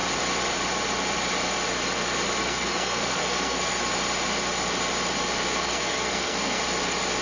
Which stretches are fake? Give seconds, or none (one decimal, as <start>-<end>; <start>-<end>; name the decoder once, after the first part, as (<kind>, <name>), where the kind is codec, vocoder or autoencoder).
2.4-3.8 (codec, SNAC); 5.6-6.6